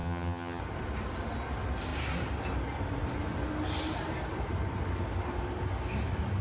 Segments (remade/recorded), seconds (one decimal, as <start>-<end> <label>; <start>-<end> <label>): 0.0-0.6 remade; 0.6-6.4 recorded